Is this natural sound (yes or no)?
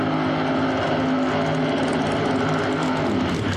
yes